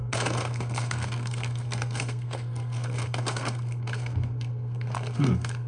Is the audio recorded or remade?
remade